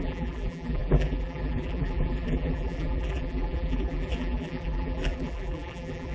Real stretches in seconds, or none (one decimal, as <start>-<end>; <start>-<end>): none